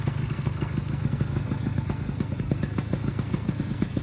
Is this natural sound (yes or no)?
no